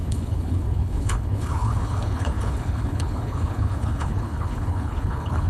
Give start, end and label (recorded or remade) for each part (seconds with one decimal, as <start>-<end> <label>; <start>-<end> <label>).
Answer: 0.0-5.5 remade